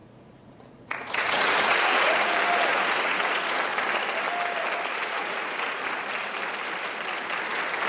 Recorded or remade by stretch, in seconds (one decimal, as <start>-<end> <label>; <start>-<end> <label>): 0.0-2.3 remade; 2.3-2.7 recorded; 2.7-3.6 remade; 3.6-5.0 recorded; 5.0-5.8 remade; 5.8-7.9 recorded